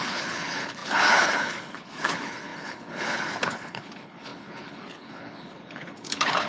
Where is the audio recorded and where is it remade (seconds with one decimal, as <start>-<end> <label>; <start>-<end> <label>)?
0.0-6.5 remade